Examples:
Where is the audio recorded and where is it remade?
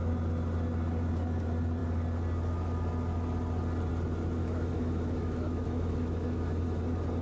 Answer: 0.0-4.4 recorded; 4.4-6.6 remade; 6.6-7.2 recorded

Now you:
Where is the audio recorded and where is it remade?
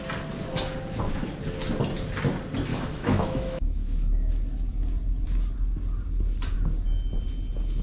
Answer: 0.0-2.7 recorded; 2.7-4.3 remade; 4.3-7.8 recorded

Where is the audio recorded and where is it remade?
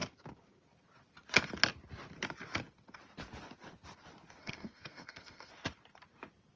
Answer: 0.0-4.4 recorded; 4.4-5.5 remade; 5.5-6.6 recorded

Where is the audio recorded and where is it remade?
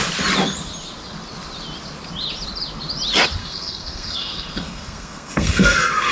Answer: 0.0-3.4 recorded; 3.4-6.1 remade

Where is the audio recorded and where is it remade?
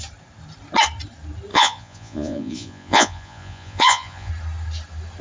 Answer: 0.0-1.5 recorded; 1.5-4.3 remade; 4.3-5.2 recorded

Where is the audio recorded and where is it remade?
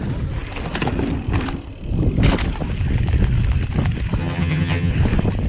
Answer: 0.0-4.2 recorded; 4.2-4.9 remade; 4.9-5.5 recorded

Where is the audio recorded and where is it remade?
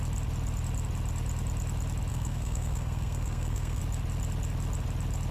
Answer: 0.0-2.1 recorded; 2.1-3.8 remade; 3.8-5.3 recorded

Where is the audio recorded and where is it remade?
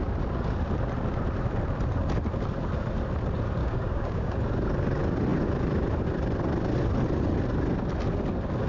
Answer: 0.0-3.6 recorded; 3.6-4.4 remade; 4.4-8.7 recorded